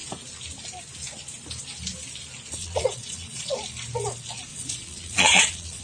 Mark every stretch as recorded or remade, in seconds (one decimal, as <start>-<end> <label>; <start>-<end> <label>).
0.0-2.6 recorded; 2.6-3.5 remade; 3.5-4.5 recorded; 4.5-5.8 remade